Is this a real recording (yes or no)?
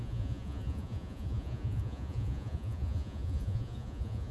no